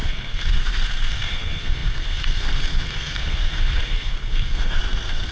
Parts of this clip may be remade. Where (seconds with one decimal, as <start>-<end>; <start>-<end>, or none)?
0.0-5.3